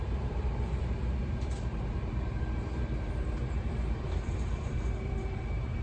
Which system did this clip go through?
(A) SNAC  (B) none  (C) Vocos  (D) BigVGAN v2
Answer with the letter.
D